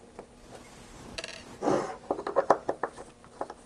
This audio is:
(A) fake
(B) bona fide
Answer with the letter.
B